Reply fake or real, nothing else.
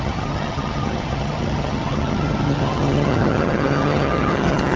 fake